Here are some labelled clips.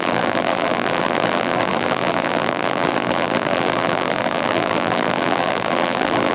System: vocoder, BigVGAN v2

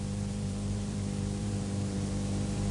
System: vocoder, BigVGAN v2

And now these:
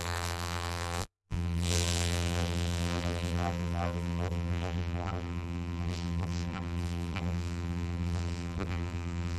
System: vocoder, BigVGAN v2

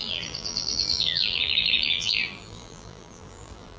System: vocoder, BigVGAN v2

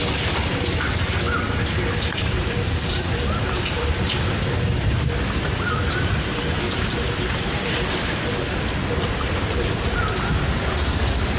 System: none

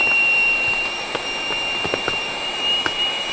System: vocoder, BigVGAN v2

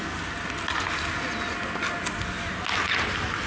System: none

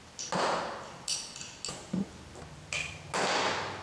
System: none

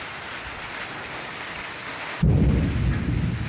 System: none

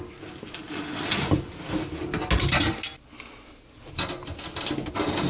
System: none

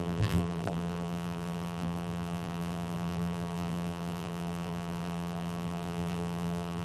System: vocoder, BigVGAN v2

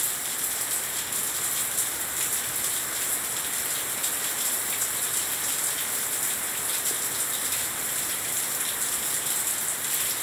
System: vocoder, BigVGAN v2